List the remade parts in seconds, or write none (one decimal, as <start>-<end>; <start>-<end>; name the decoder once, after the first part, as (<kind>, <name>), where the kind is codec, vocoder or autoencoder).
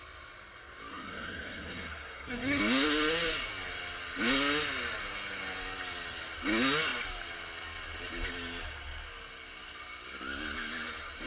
0.9-2.6 (codec, SNAC)